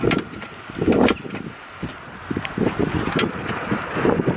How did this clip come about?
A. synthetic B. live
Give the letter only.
B